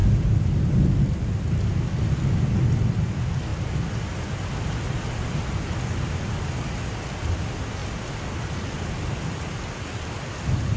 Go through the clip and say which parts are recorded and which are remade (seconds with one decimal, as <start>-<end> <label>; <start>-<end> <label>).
0.0-10.8 recorded